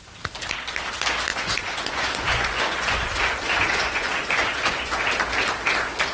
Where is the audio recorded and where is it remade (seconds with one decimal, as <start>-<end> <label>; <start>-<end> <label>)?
0.0-1.3 recorded; 1.3-5.0 remade; 5.0-6.1 recorded